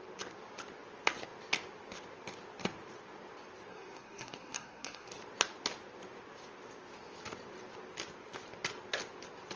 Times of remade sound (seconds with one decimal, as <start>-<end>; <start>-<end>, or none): 3.7-5.1